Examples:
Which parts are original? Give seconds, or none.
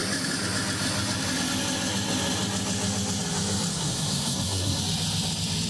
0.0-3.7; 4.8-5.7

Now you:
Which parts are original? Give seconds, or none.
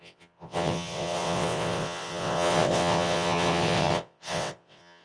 none